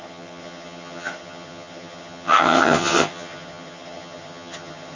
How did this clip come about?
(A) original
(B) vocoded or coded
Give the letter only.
B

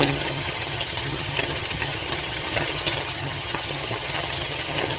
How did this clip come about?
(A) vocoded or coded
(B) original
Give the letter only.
A